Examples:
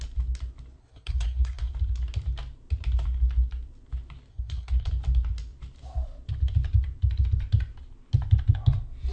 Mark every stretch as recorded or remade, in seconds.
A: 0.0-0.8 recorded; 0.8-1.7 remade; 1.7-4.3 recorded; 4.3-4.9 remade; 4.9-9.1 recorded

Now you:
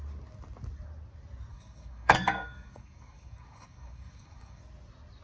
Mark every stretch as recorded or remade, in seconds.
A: 0.0-1.5 recorded; 1.5-4.6 remade; 4.6-5.2 recorded